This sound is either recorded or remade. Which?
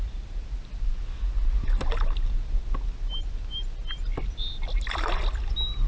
recorded